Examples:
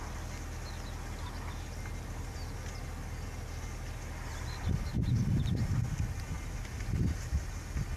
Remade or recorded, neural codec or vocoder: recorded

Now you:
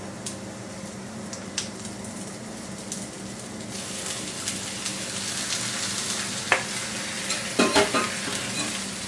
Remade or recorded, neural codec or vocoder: recorded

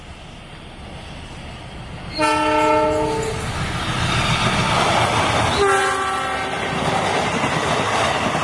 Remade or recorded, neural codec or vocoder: recorded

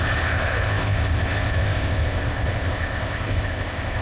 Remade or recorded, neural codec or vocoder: remade, codec, ZipCodec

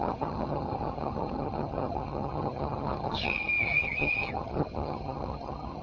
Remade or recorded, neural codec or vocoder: remade, vocoder, HiFi-GAN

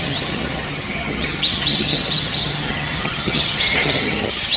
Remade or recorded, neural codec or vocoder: remade, vocoder, HiFi-GAN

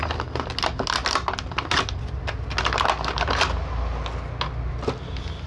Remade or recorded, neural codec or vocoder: recorded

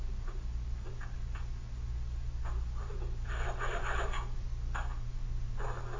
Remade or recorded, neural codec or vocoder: recorded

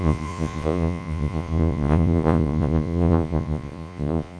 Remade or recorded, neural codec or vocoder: remade, vocoder, Vocos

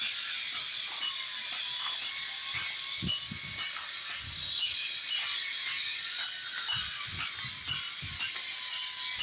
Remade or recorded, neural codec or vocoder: recorded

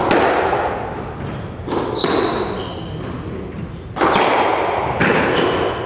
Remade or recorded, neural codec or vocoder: recorded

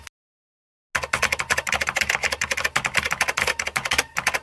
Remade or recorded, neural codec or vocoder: recorded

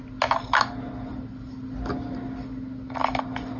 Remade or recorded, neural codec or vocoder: recorded